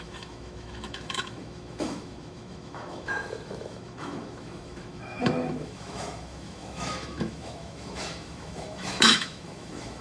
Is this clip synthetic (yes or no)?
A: yes